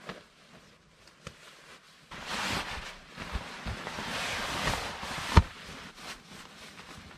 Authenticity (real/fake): real